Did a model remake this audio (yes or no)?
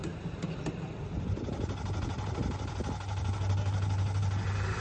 no